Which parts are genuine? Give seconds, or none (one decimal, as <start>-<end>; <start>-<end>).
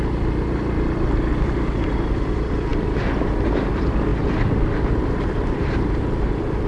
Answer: 0.0-6.7